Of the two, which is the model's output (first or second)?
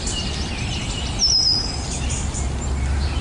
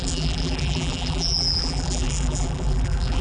second